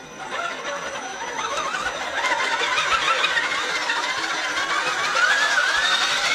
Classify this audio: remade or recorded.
recorded